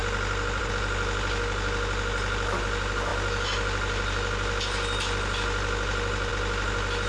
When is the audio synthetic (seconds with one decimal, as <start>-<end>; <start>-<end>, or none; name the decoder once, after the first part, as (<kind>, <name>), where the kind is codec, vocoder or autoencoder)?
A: none